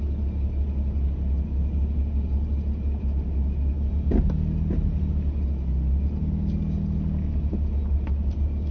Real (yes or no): yes